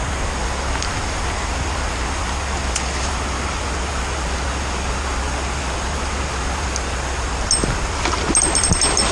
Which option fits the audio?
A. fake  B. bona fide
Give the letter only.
B